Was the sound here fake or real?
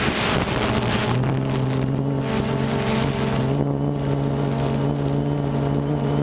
real